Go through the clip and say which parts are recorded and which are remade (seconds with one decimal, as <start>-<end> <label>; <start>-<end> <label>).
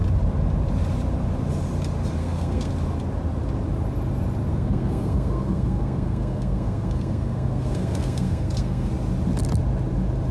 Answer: 0.0-2.2 recorded; 2.2-2.7 remade; 2.7-4.5 recorded; 4.5-8.9 remade; 8.9-10.3 recorded